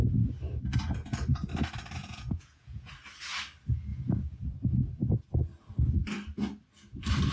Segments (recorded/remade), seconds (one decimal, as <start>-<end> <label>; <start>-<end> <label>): 0.0-2.0 recorded; 2.0-2.9 remade; 2.9-3.9 recorded; 3.9-4.8 remade; 4.8-7.3 recorded